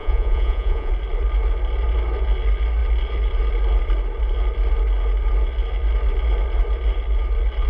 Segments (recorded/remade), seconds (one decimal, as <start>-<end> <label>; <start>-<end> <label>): 0.0-0.9 remade; 0.9-7.7 recorded